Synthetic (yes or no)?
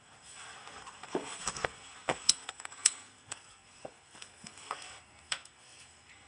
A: yes